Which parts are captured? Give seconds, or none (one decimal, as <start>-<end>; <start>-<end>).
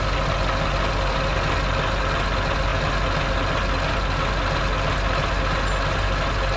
0.0-6.6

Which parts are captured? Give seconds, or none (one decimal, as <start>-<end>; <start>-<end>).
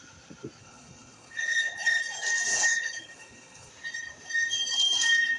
0.0-0.6; 2.0-2.5; 3.7-5.4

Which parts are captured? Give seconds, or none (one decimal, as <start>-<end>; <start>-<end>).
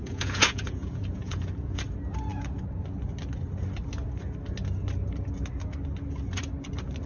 1.8-7.1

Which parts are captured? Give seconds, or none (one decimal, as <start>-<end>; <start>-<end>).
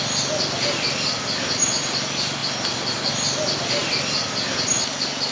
0.0-5.3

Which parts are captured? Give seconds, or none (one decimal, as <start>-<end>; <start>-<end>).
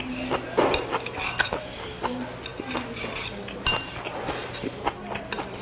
0.0-5.6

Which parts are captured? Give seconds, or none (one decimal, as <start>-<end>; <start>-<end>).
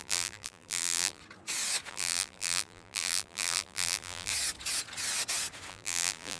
1.2-1.9; 4.3-5.7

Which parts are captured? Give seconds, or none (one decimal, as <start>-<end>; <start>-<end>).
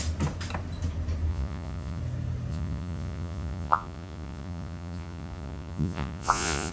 0.0-1.3; 2.0-2.5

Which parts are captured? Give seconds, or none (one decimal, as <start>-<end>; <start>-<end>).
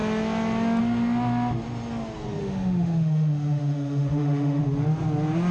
0.0-2.4; 4.6-5.5